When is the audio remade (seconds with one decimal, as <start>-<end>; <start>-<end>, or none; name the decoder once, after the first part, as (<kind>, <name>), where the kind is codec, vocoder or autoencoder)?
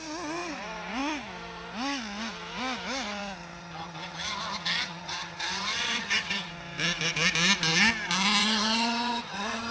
3.6-6.5 (vocoder, HiFi-GAN); 8.4-9.7